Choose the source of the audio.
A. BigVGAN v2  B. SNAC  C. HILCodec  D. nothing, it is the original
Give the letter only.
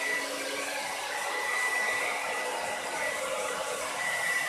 A